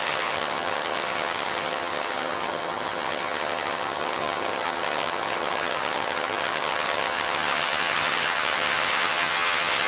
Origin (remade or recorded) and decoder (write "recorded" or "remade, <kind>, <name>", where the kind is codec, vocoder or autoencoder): remade, vocoder, HiFi-GAN